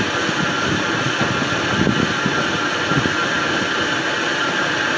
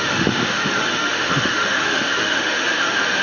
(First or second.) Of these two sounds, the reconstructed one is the second